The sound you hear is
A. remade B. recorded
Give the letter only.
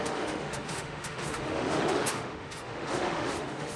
A